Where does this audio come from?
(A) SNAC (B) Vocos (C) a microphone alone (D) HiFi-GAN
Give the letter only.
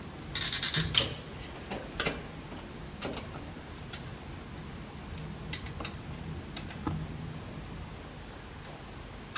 C